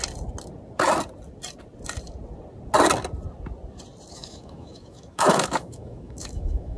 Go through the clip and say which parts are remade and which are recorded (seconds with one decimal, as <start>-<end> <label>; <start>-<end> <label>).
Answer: 0.0-4.1 recorded; 4.1-6.8 remade